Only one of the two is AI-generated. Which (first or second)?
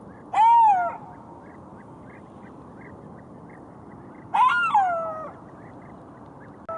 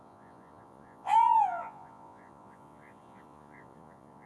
second